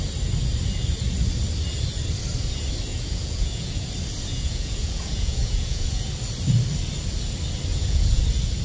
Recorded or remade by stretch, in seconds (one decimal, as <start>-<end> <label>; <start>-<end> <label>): 0.0-2.9 recorded; 2.9-3.9 remade; 3.9-4.3 recorded; 4.3-6.1 remade; 6.1-7.7 recorded; 7.7-8.2 remade; 8.2-8.6 recorded